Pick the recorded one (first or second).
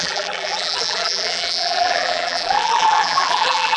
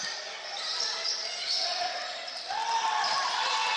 second